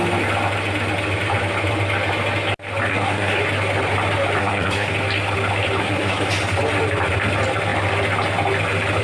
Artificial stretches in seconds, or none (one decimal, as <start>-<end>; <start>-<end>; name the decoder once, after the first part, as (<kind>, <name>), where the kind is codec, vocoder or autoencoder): 2.9-3.4 (codec, SNAC); 4.4-4.9; 5.8-6.3